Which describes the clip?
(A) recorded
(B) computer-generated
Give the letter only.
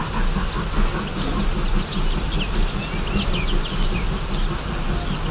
A